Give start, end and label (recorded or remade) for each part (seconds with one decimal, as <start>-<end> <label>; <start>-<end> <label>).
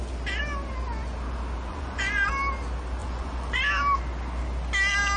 0.0-1.7 recorded; 1.7-2.3 remade; 2.3-3.0 recorded; 3.0-3.6 remade; 3.6-5.2 recorded